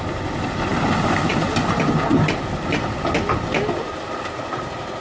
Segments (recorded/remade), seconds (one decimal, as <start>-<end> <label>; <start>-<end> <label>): 0.0-5.0 recorded